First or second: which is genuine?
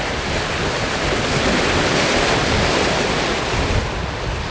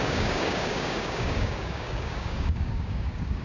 first